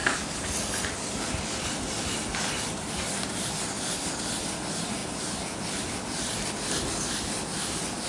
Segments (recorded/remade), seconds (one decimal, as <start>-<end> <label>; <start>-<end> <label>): 0.0-8.1 recorded